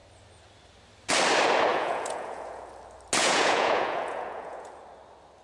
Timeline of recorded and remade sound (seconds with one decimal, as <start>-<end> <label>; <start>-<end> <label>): 0.0-1.7 recorded; 1.7-2.7 remade; 2.7-3.2 recorded; 3.2-4.7 remade; 4.7-5.4 recorded